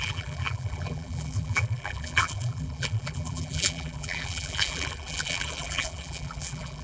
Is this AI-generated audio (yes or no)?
yes